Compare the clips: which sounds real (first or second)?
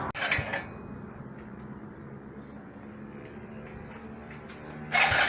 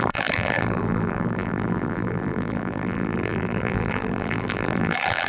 first